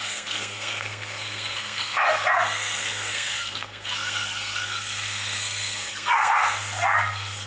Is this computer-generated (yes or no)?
yes